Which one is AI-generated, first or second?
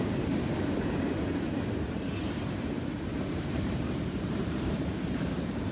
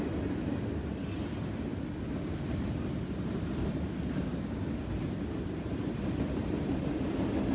first